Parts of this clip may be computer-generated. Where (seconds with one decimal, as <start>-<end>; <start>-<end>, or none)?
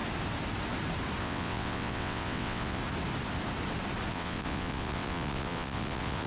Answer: 1.2-2.8; 4.1-6.3